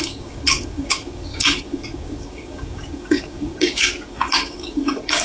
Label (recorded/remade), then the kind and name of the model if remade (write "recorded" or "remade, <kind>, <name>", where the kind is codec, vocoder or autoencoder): remade, codec, DAC